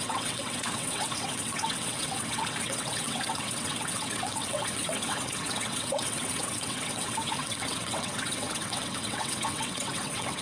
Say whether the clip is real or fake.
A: fake